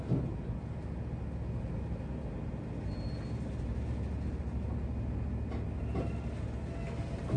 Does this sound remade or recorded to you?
recorded